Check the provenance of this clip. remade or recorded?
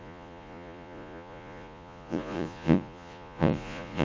remade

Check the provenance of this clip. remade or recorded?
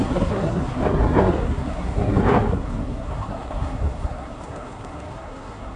remade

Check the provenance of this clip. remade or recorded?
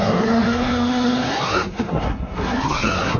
remade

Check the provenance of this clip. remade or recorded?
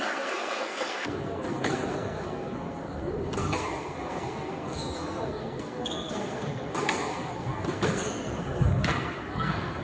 remade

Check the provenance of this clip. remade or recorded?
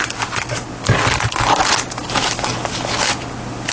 recorded